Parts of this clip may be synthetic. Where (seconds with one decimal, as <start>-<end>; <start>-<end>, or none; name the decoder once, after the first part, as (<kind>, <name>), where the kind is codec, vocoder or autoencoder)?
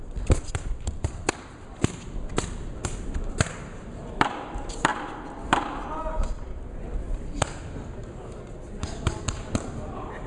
0.0-4.9 (vocoder, BigVGAN v2); 9.2-10.3